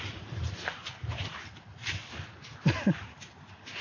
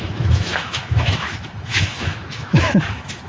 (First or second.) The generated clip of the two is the second